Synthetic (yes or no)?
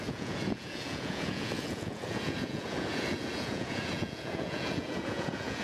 yes